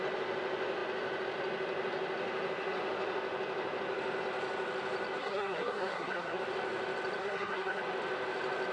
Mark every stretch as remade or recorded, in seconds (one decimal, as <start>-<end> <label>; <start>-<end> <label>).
0.0-5.2 recorded; 5.2-6.4 remade; 6.4-7.2 recorded; 7.2-7.8 remade; 7.8-8.7 recorded